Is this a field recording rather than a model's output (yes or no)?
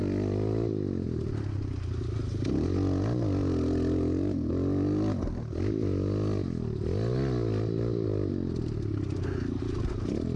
yes